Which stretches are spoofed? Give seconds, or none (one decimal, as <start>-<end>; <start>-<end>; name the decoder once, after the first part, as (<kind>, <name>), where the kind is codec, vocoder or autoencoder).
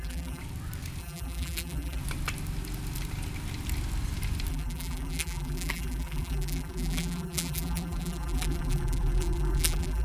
0.0-0.4 (vocoder, BigVGAN v2); 1.0-2.0; 4.5-10.0